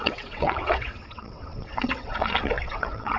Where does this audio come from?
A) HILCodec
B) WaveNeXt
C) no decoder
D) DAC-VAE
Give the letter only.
B